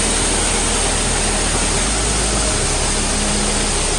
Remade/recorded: recorded